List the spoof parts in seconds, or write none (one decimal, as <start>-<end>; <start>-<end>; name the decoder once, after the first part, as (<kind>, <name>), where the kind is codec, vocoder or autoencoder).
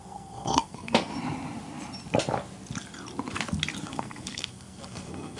0.0-1.1 (codec, SNAC); 3.8-5.4